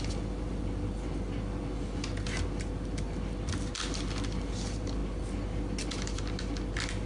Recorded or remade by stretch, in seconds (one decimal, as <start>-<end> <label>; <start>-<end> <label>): 0.0-7.1 recorded